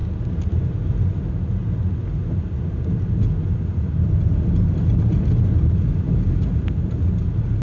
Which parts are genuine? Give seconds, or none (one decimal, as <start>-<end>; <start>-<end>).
0.0-7.6